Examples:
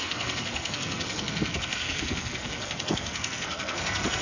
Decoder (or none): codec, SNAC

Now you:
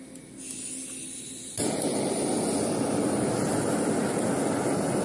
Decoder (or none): none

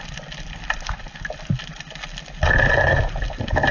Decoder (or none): none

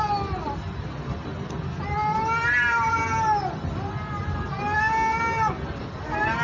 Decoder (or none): none